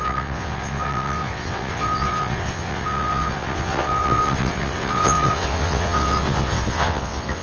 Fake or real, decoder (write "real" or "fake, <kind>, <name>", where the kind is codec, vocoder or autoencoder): fake, vocoder, WaveNeXt